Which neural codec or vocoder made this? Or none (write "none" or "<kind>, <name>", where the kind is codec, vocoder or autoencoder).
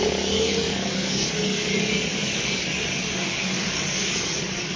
codec, DAC